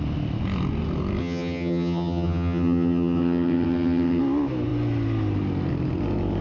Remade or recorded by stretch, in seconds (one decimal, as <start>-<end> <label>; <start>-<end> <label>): 0.0-1.2 recorded; 1.2-4.2 remade; 4.2-6.4 recorded